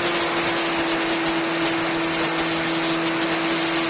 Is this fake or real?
real